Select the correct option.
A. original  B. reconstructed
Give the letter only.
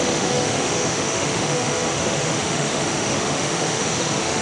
B